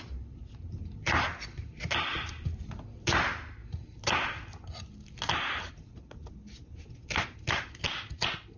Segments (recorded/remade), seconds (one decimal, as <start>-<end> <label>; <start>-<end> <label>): 0.0-8.6 recorded

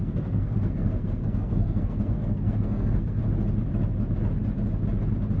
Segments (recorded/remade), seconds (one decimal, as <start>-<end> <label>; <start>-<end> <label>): 0.0-3.2 remade; 3.2-5.4 recorded

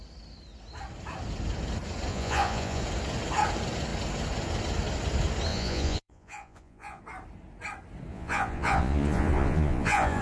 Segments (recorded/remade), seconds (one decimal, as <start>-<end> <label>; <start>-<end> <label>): 0.0-2.1 recorded; 2.1-2.8 remade; 2.8-5.5 recorded; 5.5-7.0 remade; 7.0-8.1 recorded; 8.1-10.2 remade

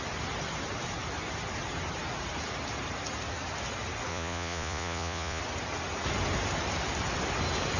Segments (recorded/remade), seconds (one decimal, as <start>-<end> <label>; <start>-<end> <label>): 0.0-4.1 recorded; 4.1-5.4 remade; 5.4-7.8 recorded

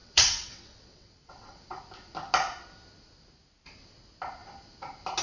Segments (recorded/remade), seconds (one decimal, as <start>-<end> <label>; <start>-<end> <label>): 0.0-1.8 remade; 1.8-5.2 recorded

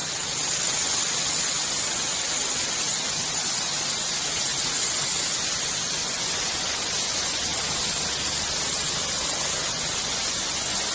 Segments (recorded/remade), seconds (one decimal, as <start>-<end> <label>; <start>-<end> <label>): 0.0-0.7 recorded; 0.7-7.5 remade; 7.5-8.7 recorded; 8.7-10.9 remade

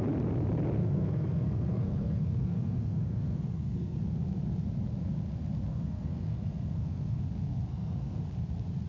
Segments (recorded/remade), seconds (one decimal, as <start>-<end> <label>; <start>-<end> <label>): 0.0-0.8 recorded; 0.8-4.0 remade; 4.0-5.7 recorded; 5.7-7.2 remade; 7.2-7.7 recorded; 7.7-8.2 remade; 8.2-8.9 recorded